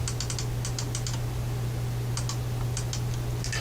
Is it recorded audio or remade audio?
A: recorded